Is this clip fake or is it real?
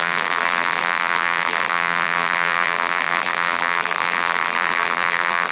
fake